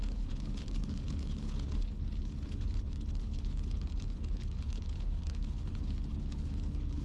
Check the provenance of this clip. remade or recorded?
remade